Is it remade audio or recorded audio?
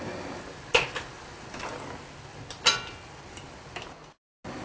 recorded